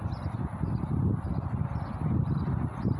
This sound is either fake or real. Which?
real